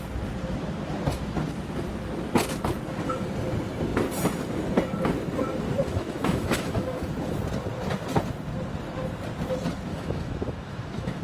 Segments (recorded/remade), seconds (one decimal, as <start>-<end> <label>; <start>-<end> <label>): 0.0-5.9 recorded; 5.9-7.0 remade; 7.0-9.9 recorded; 9.9-11.2 remade